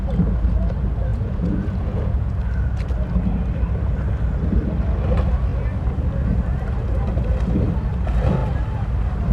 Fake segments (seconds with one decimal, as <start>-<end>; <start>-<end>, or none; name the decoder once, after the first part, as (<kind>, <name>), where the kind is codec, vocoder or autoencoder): 1.1-2.4 (vocoder, Vocos)